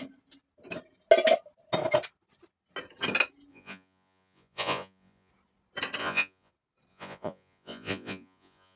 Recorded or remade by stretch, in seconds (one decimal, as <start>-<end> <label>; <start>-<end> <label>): 0.0-3.5 recorded; 3.5-5.3 remade; 5.3-6.0 recorded; 6.0-6.5 remade; 6.5-6.9 recorded; 6.9-8.8 remade